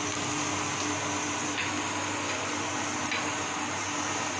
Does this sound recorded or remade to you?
recorded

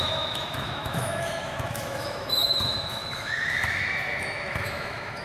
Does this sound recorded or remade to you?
remade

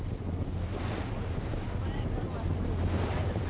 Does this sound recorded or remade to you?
recorded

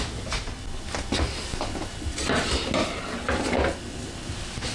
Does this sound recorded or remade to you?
recorded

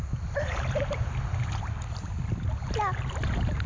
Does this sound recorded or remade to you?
recorded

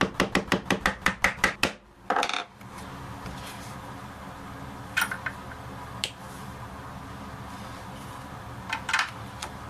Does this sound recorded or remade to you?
recorded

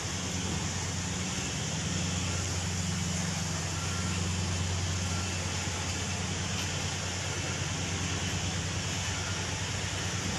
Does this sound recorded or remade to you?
recorded